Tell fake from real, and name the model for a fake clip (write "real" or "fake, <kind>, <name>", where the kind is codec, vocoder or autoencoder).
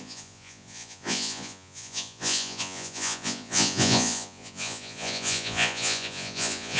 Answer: fake, vocoder, Vocos